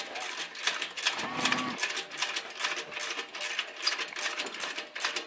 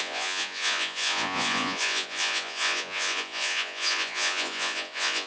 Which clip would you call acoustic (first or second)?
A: first